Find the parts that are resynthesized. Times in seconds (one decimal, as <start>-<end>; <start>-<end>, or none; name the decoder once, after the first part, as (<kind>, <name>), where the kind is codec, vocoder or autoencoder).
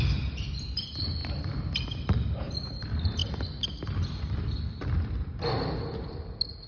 0.0-3.2 (vocoder, BigVGAN v2); 4.3-6.7